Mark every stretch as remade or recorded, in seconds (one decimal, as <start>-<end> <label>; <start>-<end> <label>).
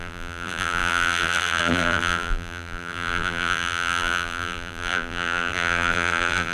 0.0-6.5 remade